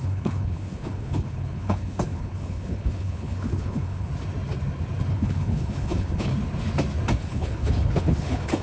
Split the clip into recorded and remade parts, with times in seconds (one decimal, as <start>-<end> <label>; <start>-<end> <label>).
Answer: 0.0-4.1 remade; 4.1-5.1 recorded; 5.1-6.3 remade; 6.3-7.2 recorded; 7.2-8.6 remade